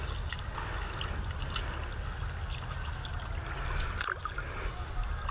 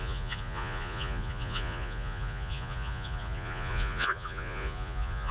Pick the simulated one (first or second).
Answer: second